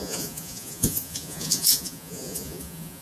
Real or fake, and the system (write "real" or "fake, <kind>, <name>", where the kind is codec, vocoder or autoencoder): fake, vocoder, Vocos